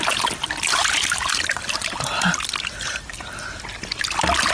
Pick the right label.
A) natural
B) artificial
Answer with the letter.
A